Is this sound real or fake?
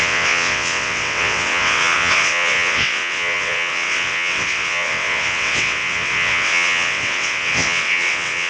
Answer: fake